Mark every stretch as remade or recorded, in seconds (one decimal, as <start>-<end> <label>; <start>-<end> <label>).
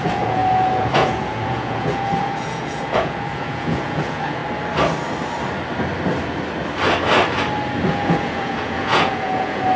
0.0-4.4 remade; 4.4-7.9 recorded; 7.9-9.8 remade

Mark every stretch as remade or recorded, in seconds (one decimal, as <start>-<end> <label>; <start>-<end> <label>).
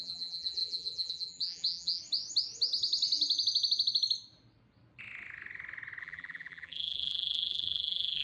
0.0-2.0 remade; 2.0-6.0 recorded; 6.0-8.2 remade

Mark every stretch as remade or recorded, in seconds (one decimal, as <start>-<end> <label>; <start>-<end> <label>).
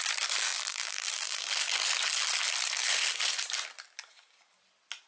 0.0-0.5 recorded; 0.5-1.5 remade; 1.5-5.1 recorded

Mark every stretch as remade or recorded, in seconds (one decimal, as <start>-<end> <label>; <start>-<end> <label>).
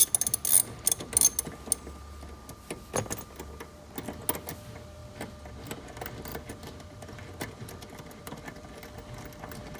0.0-6.3 recorded; 6.3-8.8 remade; 8.8-9.8 recorded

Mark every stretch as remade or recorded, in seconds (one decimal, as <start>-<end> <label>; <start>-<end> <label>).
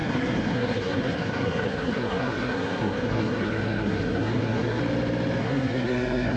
0.0-4.8 remade; 4.8-5.4 recorded; 5.4-6.4 remade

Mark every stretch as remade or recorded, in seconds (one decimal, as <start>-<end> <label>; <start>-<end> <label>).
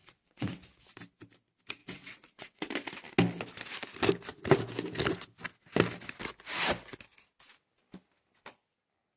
0.0-0.9 remade; 0.9-1.8 recorded; 1.8-2.7 remade; 2.7-9.2 recorded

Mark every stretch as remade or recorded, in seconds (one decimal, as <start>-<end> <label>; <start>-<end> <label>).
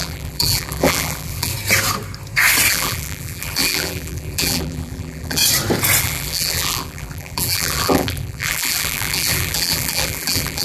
0.0-1.5 remade; 1.5-2.7 recorded; 2.7-5.4 remade; 5.4-6.0 recorded; 6.0-10.6 remade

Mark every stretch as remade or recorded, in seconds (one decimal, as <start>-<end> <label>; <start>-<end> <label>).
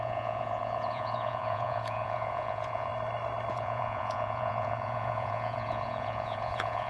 0.0-2.9 remade; 2.9-3.5 recorded; 3.5-6.9 remade